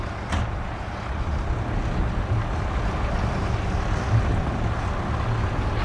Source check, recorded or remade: recorded